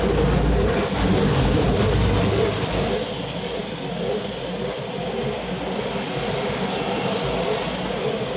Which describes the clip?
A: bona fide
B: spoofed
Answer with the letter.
A